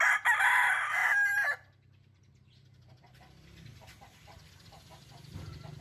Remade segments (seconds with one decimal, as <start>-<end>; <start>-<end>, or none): 1.0-4.5